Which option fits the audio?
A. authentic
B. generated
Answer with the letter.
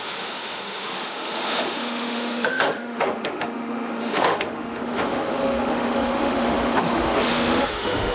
B